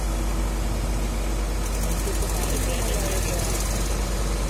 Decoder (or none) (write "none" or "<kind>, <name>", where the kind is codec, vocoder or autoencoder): none